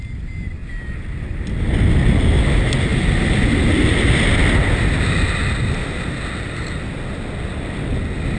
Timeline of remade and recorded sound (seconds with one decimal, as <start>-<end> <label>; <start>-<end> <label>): 0.0-8.4 recorded